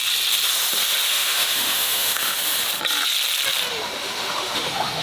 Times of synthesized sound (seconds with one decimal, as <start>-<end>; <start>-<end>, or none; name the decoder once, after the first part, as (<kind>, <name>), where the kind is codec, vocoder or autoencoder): 1.1-2.4 (autoencoder, DAC-VAE); 3.7-5.0